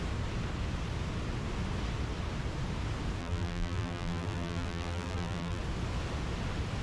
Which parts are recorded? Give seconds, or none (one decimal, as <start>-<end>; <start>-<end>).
0.0-3.2; 5.6-6.8